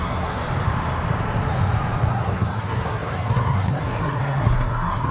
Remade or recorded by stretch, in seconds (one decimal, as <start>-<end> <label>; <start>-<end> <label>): 0.0-0.4 remade; 0.4-2.1 recorded; 2.1-5.1 remade